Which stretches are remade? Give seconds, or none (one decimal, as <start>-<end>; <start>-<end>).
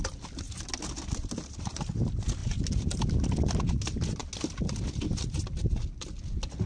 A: none